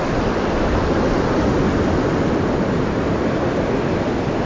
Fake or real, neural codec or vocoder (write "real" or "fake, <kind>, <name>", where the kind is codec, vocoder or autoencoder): real